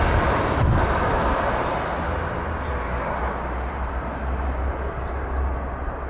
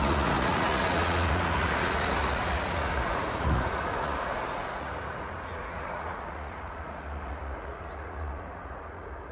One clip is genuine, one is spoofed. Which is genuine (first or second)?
first